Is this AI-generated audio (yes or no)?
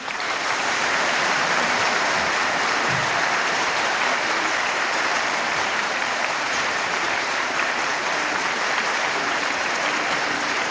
yes